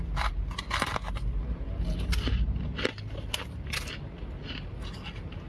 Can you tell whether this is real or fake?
real